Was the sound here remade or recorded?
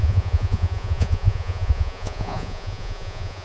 remade